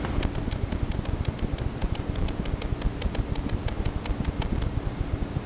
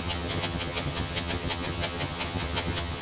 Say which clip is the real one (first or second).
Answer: first